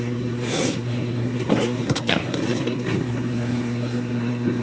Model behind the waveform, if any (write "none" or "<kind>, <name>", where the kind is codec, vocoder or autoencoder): codec, SNAC